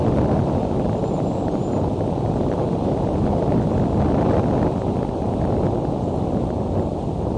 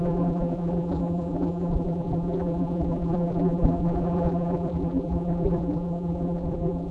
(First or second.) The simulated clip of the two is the second